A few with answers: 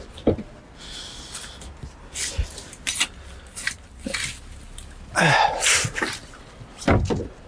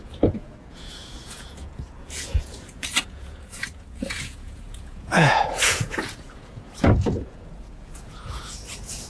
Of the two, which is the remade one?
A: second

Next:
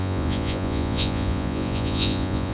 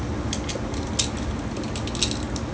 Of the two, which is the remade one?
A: first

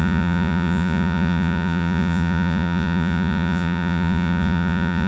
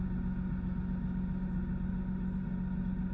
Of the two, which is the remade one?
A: first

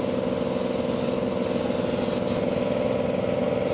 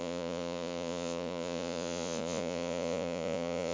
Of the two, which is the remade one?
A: second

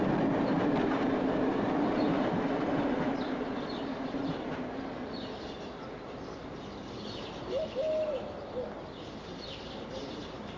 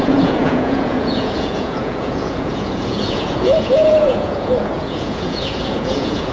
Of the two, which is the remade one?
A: second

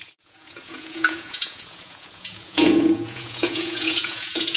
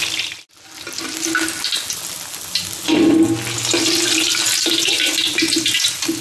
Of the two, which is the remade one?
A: first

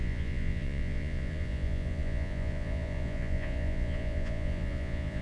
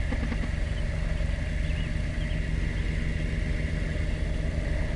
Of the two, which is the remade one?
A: first